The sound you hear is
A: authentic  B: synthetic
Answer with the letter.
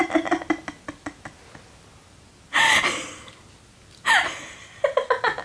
A